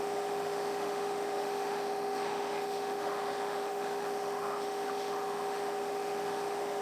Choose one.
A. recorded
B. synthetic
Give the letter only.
B